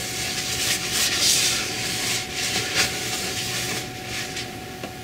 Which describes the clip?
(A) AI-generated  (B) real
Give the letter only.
B